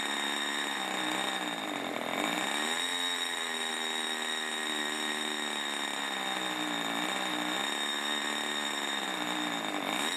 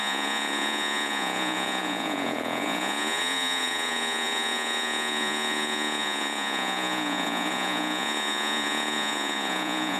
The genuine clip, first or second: first